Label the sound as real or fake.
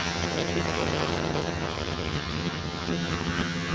fake